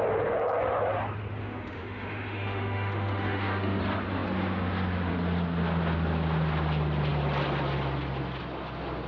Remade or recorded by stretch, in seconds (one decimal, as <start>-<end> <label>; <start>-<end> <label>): 0.0-1.4 recorded; 1.4-3.8 remade; 3.8-9.1 recorded